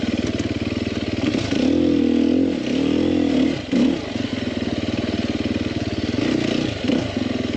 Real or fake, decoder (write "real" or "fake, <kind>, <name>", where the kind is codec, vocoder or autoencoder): real